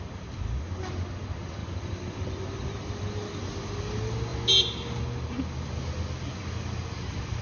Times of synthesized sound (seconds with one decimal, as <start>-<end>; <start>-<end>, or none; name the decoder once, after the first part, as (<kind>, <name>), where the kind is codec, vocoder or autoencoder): 1.6-3.4 (vocoder, BigVGAN v2)